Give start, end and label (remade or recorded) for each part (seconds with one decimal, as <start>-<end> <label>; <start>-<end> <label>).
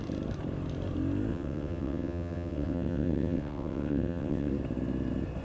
0.0-1.3 recorded; 1.3-4.5 remade; 4.5-5.4 recorded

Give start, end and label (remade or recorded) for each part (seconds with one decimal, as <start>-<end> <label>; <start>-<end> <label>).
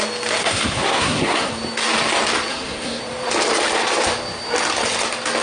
0.0-0.4 recorded; 0.4-1.5 remade; 1.5-2.5 recorded; 2.5-3.0 remade; 3.0-5.4 recorded